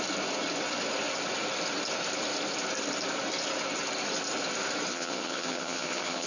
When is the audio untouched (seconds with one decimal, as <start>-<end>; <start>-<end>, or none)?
0.0-4.9